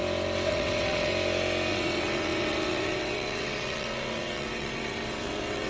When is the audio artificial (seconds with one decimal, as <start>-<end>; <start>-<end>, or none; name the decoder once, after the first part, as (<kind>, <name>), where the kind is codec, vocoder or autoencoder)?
0.5-1.1 (vocoder, WaveNeXt); 1.7-5.7

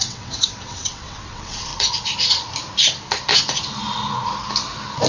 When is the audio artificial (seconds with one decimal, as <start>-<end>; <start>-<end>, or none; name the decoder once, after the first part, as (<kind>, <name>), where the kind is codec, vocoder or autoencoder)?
0.0-1.7 (vocoder, WaveNeXt)